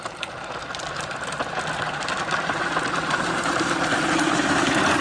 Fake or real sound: real